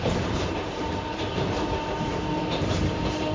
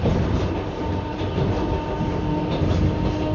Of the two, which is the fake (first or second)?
first